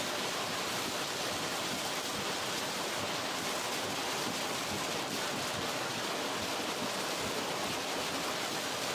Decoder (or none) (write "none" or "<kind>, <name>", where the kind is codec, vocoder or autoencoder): none